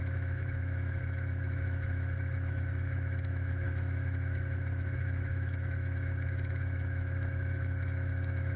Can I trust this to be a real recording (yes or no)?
no